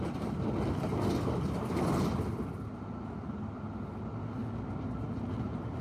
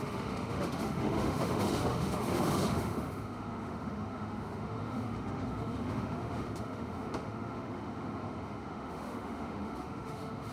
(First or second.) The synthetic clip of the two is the second